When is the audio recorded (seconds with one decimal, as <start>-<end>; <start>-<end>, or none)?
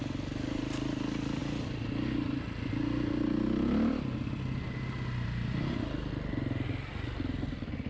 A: 0.0-7.9